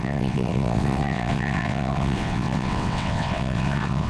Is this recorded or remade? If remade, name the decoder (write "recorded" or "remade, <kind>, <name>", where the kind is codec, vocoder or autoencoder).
remade, vocoder, WaveNeXt